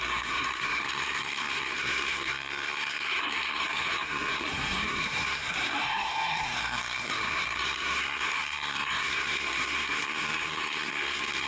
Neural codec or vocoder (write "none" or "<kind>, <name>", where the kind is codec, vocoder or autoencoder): codec, SNAC